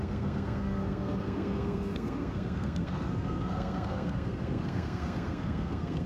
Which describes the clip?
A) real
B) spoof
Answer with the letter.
B